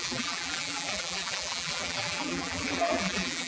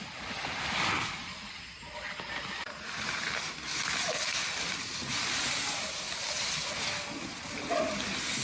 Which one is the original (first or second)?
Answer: second